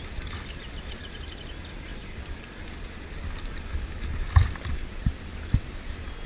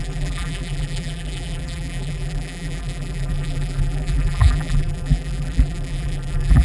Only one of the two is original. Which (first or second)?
first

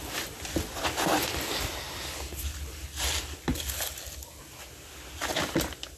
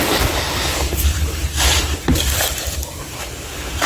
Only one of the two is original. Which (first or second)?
first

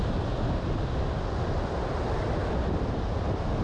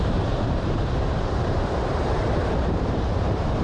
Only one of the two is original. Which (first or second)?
first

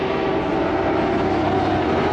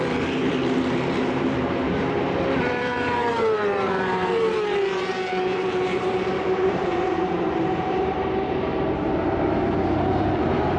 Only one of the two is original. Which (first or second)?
first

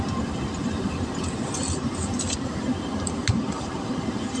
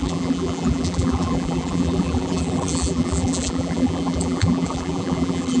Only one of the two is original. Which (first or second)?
first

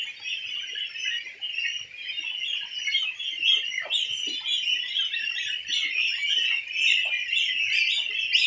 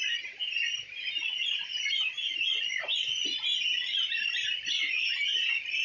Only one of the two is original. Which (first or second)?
first